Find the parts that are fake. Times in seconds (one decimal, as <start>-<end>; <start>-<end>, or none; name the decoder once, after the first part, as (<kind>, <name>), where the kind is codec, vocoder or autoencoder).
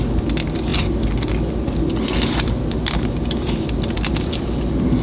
none